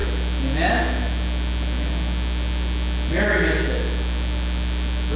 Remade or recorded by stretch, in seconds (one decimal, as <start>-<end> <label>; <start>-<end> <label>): 0.0-5.2 recorded